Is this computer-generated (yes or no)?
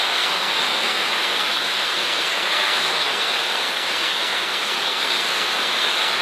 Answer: yes